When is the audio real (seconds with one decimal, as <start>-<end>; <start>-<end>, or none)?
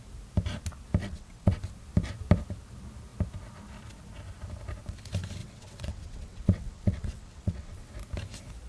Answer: 0.0-1.0; 1.6-5.4; 7.9-8.7